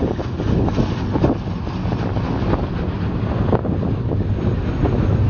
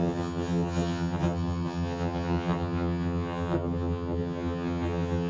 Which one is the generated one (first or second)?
second